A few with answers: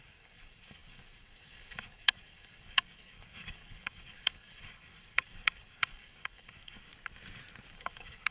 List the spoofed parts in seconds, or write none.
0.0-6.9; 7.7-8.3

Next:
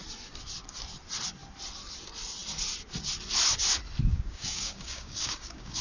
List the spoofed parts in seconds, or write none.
4.1-5.8